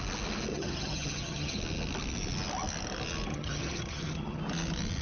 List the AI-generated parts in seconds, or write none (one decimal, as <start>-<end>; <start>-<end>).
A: 0.5-1.6; 3.3-4.4